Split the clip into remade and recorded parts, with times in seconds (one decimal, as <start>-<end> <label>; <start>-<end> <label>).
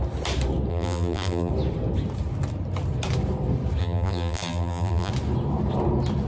0.0-0.7 recorded; 0.7-1.5 remade; 1.5-3.8 recorded; 3.8-5.1 remade; 5.1-6.3 recorded